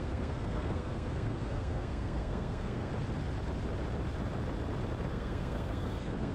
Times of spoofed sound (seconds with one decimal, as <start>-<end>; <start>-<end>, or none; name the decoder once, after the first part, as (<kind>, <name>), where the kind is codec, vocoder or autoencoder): 0.0-2.9 (codec, SNAC); 5.1-6.3